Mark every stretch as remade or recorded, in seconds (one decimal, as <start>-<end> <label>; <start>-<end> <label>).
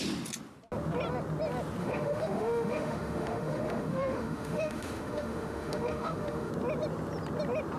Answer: 0.0-1.8 recorded; 1.8-6.5 remade; 6.5-7.8 recorded